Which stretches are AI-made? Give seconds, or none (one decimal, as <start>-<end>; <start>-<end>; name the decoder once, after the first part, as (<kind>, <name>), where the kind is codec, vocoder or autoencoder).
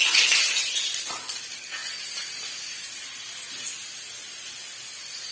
none